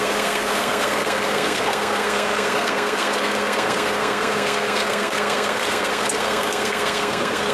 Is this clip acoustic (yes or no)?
no